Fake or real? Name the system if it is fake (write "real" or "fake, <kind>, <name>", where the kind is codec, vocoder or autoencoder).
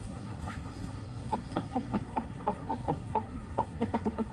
fake, codec, SNAC